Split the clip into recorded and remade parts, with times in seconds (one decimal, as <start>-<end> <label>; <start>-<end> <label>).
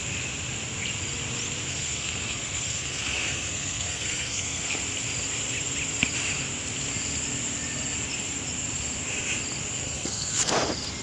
0.0-1.7 recorded; 1.7-4.8 remade; 4.8-9.8 recorded; 9.8-10.5 remade; 10.5-11.0 recorded